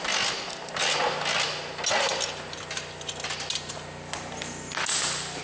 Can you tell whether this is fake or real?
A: real